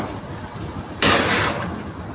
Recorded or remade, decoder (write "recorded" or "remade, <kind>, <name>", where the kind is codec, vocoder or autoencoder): recorded